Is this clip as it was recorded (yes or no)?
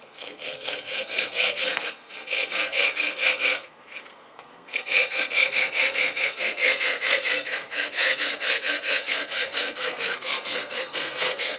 no